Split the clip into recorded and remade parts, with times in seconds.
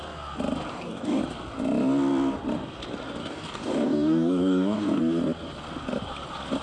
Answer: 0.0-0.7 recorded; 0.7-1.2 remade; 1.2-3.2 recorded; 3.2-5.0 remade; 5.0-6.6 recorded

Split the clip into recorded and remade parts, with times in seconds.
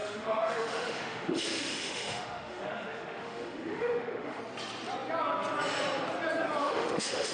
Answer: 0.0-4.4 remade; 4.4-6.6 recorded; 6.6-7.3 remade